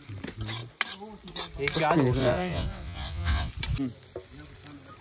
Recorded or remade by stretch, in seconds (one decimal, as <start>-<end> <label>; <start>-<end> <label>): 0.0-2.2 recorded; 2.2-3.5 remade; 3.5-5.0 recorded